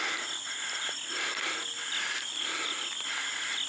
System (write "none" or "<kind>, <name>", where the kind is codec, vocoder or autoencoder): none